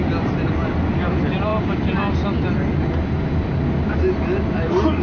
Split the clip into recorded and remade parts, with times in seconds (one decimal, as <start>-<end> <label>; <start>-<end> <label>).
0.0-5.0 recorded